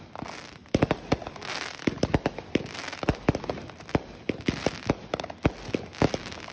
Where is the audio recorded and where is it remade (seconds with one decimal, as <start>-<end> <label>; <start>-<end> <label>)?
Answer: 0.0-6.5 recorded